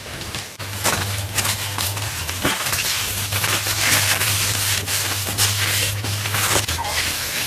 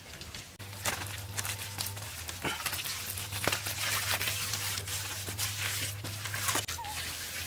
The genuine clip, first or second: second